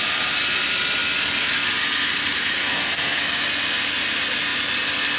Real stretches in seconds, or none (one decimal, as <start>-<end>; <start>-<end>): 0.0-2.6; 3.2-5.2